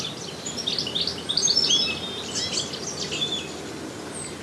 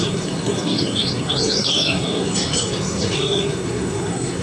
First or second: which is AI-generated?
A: second